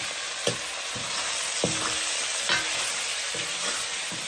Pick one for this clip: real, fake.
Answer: real